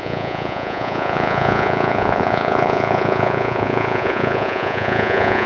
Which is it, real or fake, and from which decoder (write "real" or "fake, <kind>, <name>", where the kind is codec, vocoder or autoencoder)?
fake, vocoder, Vocos